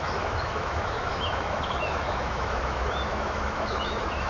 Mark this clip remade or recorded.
remade